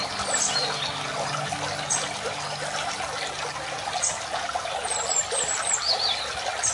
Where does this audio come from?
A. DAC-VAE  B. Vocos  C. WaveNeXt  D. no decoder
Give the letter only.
D